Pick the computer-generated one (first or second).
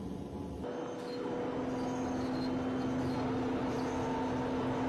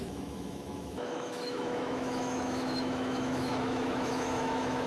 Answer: second